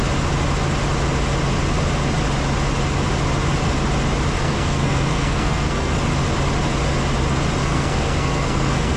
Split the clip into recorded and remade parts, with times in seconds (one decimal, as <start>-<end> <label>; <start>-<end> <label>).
0.0-4.4 recorded; 4.4-6.0 remade; 6.0-7.6 recorded; 7.6-9.0 remade